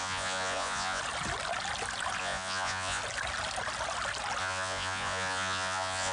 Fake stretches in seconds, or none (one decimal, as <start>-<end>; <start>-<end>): 0.0-1.0; 2.2-3.0; 4.4-6.1